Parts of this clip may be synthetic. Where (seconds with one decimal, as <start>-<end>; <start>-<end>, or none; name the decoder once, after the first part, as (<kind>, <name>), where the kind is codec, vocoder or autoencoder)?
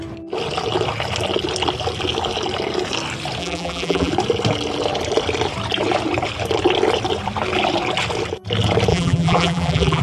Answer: 3.4-4.1 (vocoder, BigVGAN v2); 8.9-10.0